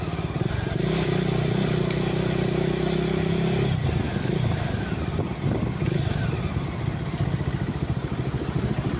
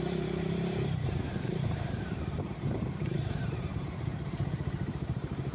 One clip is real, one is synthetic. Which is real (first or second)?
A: first